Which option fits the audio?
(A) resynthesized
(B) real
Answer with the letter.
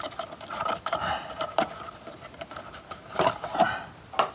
B